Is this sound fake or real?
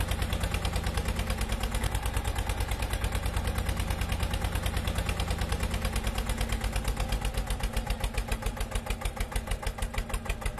real